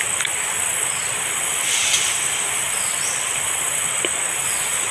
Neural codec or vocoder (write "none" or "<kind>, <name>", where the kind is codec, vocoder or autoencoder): none